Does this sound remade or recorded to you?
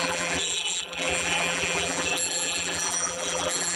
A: remade